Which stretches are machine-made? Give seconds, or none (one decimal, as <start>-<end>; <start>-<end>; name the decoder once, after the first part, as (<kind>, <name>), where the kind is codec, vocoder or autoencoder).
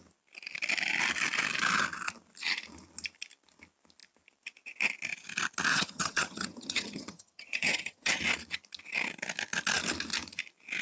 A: 5.7-8.2 (vocoder, HiFi-GAN)